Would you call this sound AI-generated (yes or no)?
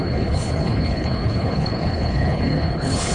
yes